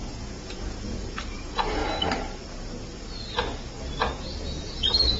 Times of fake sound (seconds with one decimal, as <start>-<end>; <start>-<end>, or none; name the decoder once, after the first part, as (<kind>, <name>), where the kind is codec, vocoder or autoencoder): 0.0-1.8 (vocoder, Vocos); 3.8-5.2